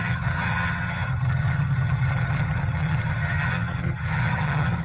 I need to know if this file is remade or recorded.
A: remade